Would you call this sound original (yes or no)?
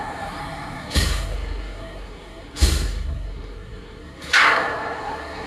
no